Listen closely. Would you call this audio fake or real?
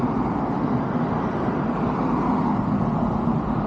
real